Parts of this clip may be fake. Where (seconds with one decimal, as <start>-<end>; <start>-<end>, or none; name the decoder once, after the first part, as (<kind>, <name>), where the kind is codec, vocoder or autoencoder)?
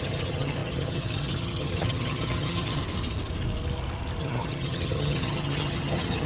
0.0-2.8 (vocoder, HiFi-GAN); 4.2-6.3